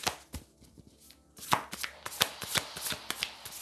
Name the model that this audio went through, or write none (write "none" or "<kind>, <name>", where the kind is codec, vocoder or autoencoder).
none